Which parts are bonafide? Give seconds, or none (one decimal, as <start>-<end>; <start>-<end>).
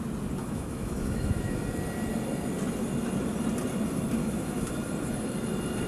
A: 0.0-0.4; 1.6-4.2; 4.7-5.9